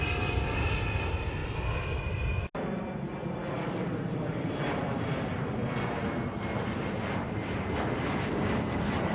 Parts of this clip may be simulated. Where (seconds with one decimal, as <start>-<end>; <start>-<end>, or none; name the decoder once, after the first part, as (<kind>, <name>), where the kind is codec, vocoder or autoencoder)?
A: 0.0-1.4 (vocoder, BigVGAN v2); 3.1-5.6; 6.4-9.1